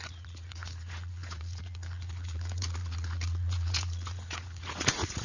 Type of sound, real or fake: fake